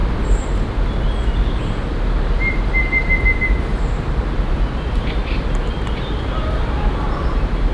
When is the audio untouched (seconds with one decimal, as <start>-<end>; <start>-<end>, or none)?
0.5-7.7